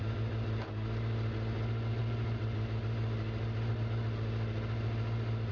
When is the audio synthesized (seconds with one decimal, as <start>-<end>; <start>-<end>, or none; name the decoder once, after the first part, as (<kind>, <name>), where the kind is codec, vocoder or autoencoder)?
2.0-5.5 (vocoder, BigVGAN v2)